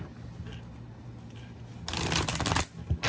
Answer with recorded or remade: recorded